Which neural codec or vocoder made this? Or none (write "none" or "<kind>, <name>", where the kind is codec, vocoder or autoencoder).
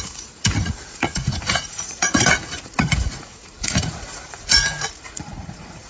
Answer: vocoder, Vocos